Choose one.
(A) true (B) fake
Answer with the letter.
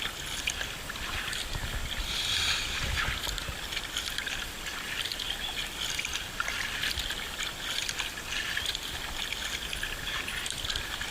A